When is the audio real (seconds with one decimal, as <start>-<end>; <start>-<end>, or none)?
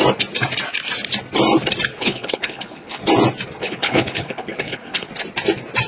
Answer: 0.0-1.9; 3.0-3.6; 5.1-5.9